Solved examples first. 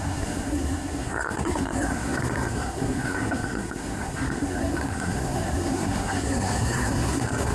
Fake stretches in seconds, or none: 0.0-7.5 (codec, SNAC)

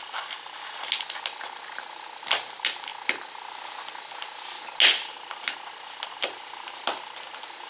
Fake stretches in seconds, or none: none

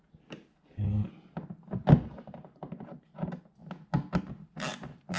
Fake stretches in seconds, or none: 0.5-1.1 (codec, SNAC)

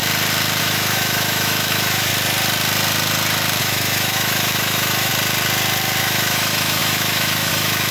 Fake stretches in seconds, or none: 0.6-2.1 (autoencoder, DAC-VAE); 3.6-5.1; 6.0-7.9

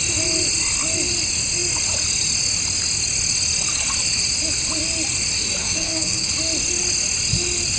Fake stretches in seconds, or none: 5.6-6.3 (codec, SNAC)

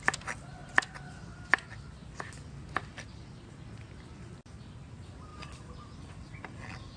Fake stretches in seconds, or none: 0.6-1.2 (vocoder, BigVGAN v2); 5.3-6.0